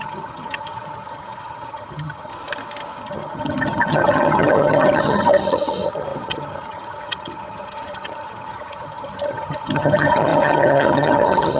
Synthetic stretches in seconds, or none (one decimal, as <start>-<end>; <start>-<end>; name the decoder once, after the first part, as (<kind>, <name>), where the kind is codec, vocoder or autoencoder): 0.0-2.3 (vocoder, HiFi-GAN); 3.0-11.6